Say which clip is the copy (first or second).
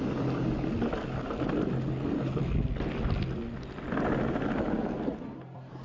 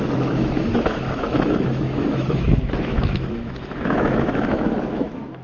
second